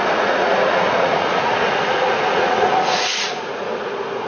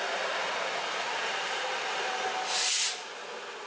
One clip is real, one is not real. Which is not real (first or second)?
first